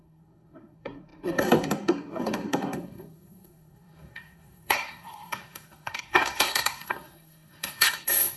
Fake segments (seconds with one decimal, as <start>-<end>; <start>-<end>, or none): 0.0-8.4